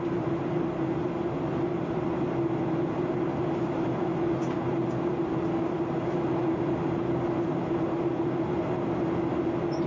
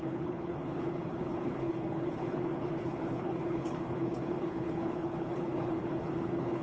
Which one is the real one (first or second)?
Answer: first